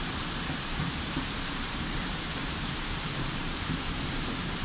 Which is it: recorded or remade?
remade